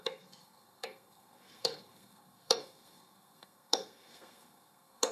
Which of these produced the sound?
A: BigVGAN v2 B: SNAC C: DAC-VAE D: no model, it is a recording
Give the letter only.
B